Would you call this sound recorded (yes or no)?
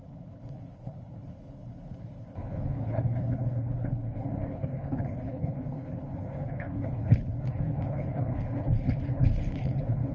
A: no